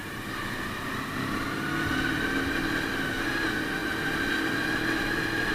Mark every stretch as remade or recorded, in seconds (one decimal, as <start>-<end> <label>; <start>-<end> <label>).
0.0-3.8 recorded; 3.8-5.5 remade